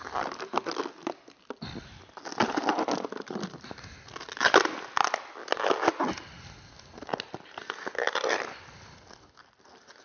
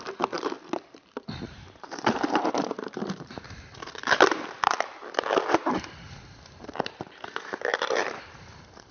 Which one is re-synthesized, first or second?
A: second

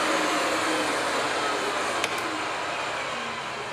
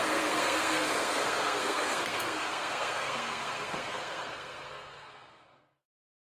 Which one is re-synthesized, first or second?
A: second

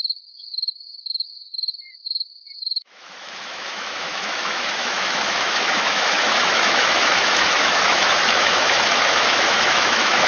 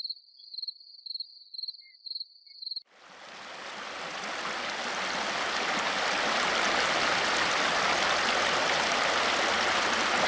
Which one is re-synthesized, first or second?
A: first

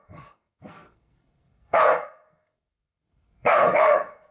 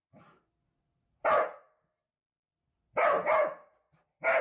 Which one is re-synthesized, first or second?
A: first